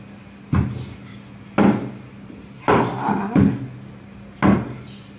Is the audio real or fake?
real